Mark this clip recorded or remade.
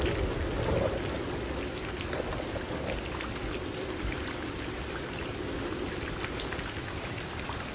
recorded